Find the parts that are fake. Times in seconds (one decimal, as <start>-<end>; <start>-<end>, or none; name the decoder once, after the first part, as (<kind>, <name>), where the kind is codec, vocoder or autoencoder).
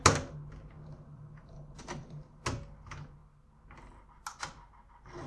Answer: 1.1-2.4 (vocoder, BigVGAN v2)